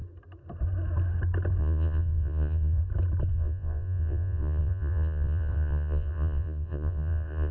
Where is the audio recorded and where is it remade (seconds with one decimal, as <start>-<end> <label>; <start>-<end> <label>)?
0.0-1.6 recorded; 1.6-2.8 remade; 2.8-3.3 recorded; 3.3-7.5 remade